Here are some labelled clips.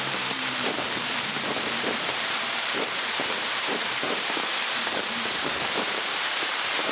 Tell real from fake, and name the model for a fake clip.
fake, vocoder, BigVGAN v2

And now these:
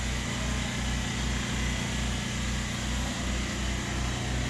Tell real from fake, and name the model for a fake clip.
real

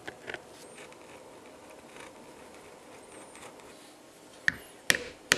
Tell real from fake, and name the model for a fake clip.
real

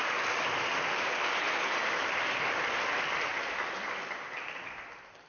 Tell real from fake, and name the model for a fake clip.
real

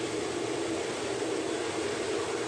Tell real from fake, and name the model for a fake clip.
real